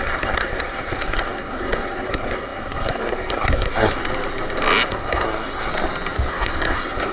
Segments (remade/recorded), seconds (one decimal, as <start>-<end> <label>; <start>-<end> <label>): 0.0-4.0 remade; 4.0-4.9 recorded; 4.9-5.7 remade; 5.7-6.3 recorded; 6.3-7.1 remade

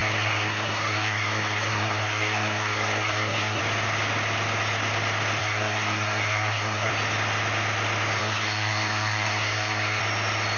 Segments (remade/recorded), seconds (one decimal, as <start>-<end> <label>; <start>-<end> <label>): 0.0-3.6 remade; 3.6-5.4 recorded; 5.4-6.9 remade; 6.9-8.2 recorded; 8.2-10.0 remade; 10.0-10.6 recorded

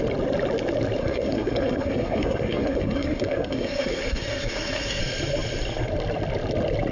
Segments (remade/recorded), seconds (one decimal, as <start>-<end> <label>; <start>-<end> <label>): 0.0-1.0 recorded; 1.0-5.0 remade; 5.0-6.9 recorded

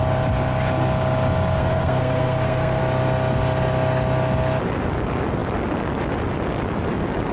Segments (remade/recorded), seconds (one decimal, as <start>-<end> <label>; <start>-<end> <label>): 0.0-1.6 recorded; 1.6-2.8 remade; 2.8-7.3 recorded